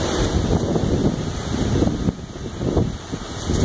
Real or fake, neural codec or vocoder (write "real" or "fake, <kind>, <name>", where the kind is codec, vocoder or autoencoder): real